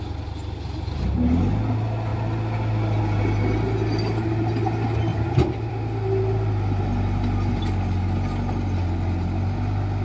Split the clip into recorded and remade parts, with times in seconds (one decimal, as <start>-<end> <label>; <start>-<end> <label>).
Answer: 0.0-5.1 recorded; 5.1-5.7 remade; 5.7-10.0 recorded